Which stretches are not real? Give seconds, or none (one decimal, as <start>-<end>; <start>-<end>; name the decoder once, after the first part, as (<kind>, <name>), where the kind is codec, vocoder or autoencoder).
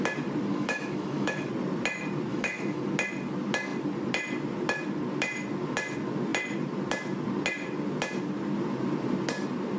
0.5-1.5 (autoencoder, DAC-VAE); 2.3-2.8